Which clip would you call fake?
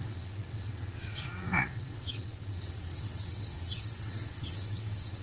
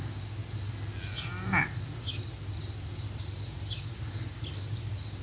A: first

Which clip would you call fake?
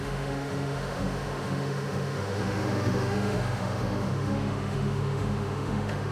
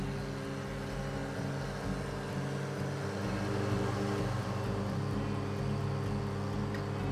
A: first